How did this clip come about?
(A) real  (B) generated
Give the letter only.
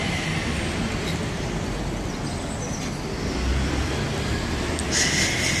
A